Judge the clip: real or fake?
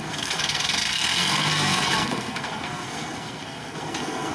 fake